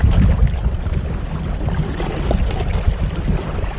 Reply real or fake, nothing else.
real